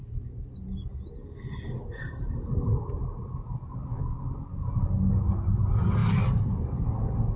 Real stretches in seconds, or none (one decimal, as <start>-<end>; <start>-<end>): 0.0-7.4